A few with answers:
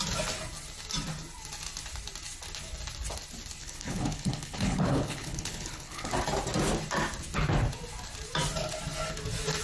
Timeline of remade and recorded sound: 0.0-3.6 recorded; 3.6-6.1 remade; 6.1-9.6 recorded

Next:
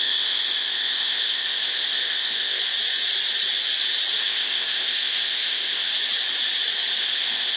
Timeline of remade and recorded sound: 0.0-2.6 remade; 2.6-4.2 recorded; 4.2-6.0 remade; 6.0-7.0 recorded; 7.0-7.6 remade

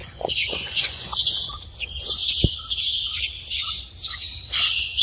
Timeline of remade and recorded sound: 0.0-1.5 remade; 1.5-5.0 recorded

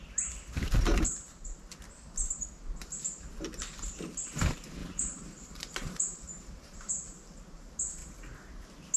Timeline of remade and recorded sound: 0.0-4.8 recorded; 4.8-6.9 remade; 6.9-9.0 recorded

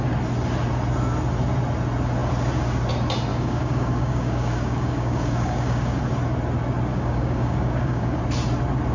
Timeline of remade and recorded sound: 0.0-3.3 recorded; 3.3-6.0 remade; 6.0-6.9 recorded; 6.9-8.2 remade; 8.2-8.9 recorded

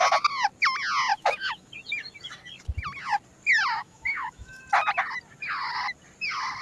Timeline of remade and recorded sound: 0.0-1.1 recorded; 1.1-1.7 remade; 1.7-3.8 recorded; 3.8-4.6 remade; 4.6-6.6 recorded

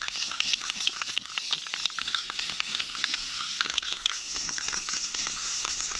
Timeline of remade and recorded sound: 0.0-1.3 remade; 1.3-2.0 recorded; 2.0-6.0 remade